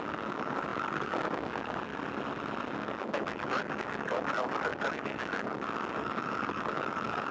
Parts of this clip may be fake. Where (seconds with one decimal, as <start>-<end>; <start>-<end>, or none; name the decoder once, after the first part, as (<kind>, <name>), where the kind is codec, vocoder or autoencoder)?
0.0-1.9 (codec, DAC); 2.7-7.3